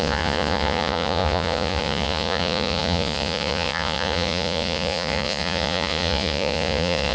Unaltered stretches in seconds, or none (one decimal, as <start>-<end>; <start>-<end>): none